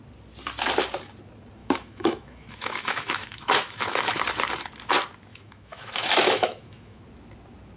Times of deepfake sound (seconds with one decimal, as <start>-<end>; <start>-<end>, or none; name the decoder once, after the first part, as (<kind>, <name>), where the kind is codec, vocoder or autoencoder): 1.6-4.2 (autoencoder, DAC-VAE); 5.3-7.0

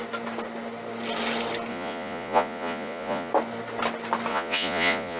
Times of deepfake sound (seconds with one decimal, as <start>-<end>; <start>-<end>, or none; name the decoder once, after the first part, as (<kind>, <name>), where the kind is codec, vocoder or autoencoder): 1.7-3.3 (vocoder, Vocos); 4.3-5.2

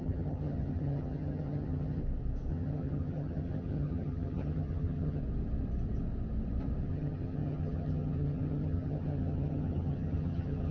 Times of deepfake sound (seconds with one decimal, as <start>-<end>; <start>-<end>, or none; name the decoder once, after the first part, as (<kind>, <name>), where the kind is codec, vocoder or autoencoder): 0.0-2.0 (vocoder, HiFi-GAN); 2.5-5.2; 6.9-10.7

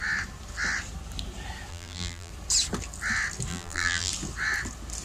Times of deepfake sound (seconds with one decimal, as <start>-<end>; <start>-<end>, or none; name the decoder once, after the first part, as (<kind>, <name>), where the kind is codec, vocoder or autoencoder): 1.7-2.3 (vocoder, BigVGAN v2); 3.5-4.1

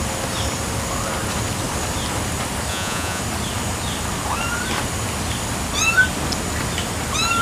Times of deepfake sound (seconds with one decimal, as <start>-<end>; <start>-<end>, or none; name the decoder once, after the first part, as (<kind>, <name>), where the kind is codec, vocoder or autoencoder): 2.7-3.2 (vocoder, Vocos)

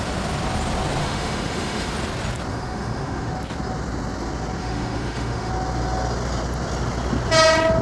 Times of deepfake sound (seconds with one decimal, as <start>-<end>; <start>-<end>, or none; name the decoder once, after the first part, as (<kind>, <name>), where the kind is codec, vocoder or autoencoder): 1.0-1.9 (autoencoder, DAC-VAE); 2.5-3.3; 4.6-5.5